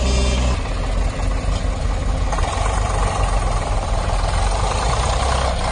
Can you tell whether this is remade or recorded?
recorded